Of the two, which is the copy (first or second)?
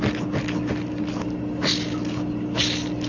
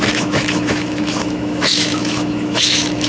second